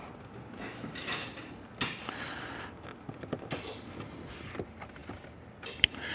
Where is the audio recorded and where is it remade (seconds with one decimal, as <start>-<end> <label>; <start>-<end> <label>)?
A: 0.0-6.1 recorded